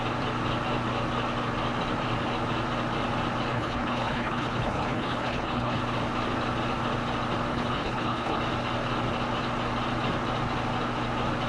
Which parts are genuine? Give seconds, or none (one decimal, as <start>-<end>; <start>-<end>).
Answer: 0.0-3.5; 5.8-7.5; 8.4-11.5